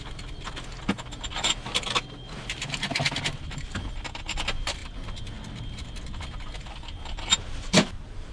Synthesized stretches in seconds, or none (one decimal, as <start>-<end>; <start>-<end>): none